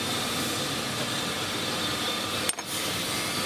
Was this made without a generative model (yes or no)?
yes